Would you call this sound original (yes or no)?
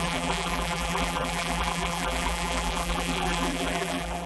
no